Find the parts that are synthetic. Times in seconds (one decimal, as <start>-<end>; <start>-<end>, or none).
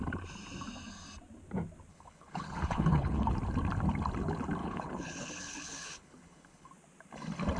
1.9-3.3; 4.6-6.7